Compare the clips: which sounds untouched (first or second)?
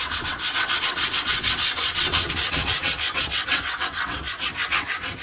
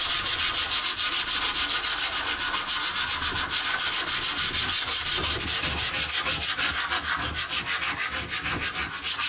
second